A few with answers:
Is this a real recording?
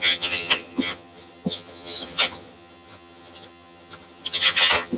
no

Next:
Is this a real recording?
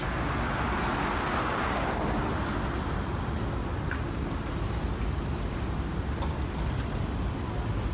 yes